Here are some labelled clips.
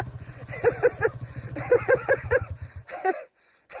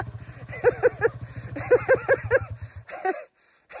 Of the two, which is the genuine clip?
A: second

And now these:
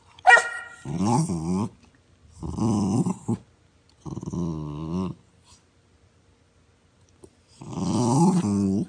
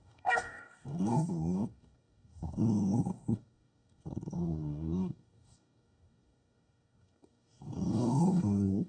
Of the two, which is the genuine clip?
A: first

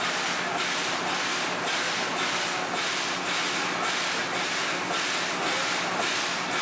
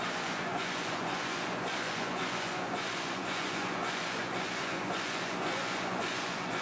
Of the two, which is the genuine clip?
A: first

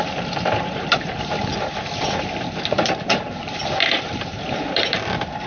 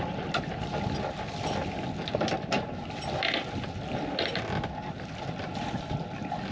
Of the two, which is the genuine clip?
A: second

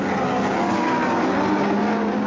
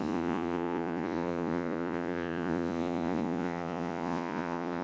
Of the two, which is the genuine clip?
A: first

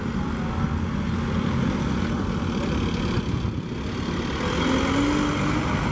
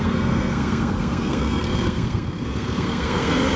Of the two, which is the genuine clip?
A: first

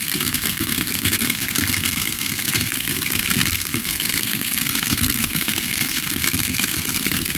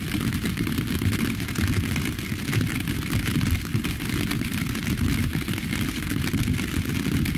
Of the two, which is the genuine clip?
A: second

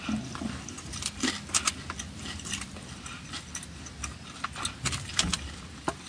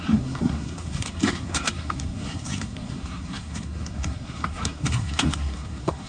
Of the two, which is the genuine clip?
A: first